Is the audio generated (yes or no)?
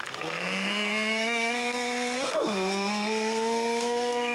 yes